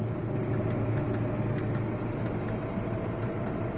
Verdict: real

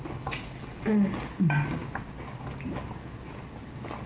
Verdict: real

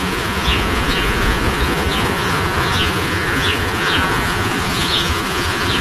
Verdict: fake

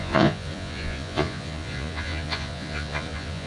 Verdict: fake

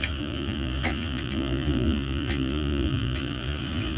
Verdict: fake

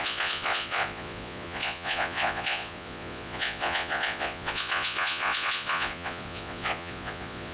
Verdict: fake